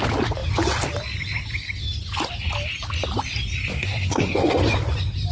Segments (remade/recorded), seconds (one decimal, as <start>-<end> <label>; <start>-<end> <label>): 0.0-3.7 recorded; 3.7-4.6 remade; 4.6-5.3 recorded